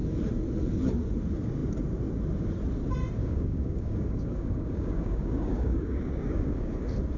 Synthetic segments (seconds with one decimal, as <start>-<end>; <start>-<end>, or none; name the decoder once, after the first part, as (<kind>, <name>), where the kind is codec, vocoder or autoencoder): 3.2-6.7 (codec, DAC)